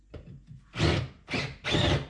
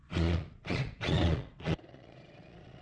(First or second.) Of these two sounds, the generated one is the second